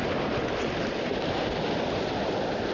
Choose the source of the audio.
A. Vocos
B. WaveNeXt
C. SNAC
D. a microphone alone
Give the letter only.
D